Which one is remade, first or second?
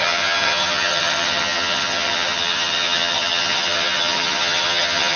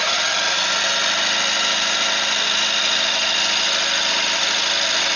first